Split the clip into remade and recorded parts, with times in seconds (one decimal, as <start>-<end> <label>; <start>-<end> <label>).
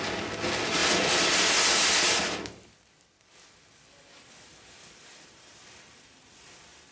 0.0-6.9 recorded